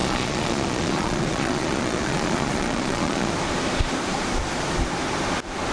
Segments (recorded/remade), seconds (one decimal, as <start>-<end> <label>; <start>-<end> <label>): 0.0-3.3 remade; 3.3-5.7 recorded